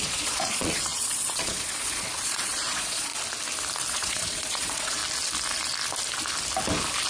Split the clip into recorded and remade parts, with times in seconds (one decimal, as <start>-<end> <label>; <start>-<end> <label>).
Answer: 0.0-3.1 remade; 3.1-3.9 recorded; 3.9-5.0 remade; 5.0-7.1 recorded